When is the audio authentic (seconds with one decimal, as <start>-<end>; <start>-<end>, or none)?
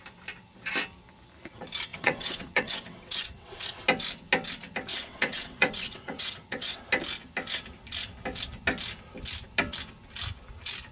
0.0-1.9; 3.8-4.9; 6.8-10.9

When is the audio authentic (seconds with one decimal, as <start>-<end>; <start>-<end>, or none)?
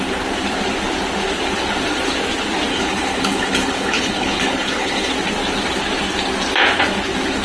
0.0-2.7; 5.1-7.4